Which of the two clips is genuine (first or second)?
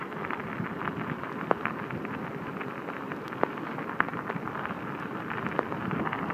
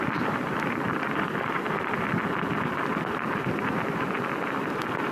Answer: first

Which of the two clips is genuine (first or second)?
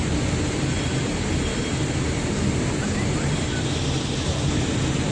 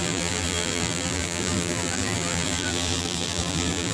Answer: first